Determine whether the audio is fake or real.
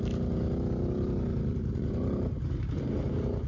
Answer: fake